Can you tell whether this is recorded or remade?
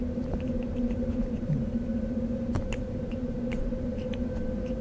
remade